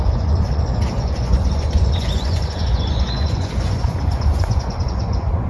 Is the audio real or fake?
fake